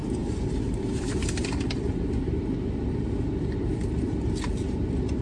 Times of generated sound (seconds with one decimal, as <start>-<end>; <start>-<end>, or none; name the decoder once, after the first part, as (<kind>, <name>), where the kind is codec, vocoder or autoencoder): none